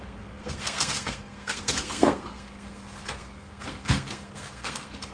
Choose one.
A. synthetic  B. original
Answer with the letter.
A